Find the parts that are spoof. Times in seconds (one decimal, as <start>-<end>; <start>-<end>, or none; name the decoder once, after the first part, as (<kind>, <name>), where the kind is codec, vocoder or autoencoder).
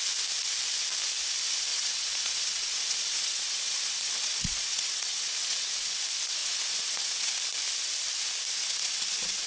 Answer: 1.7-6.0 (vocoder, WaveNeXt); 6.4-7.3; 8.6-9.5